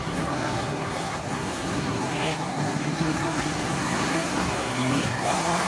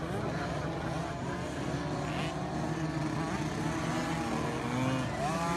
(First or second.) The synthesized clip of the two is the first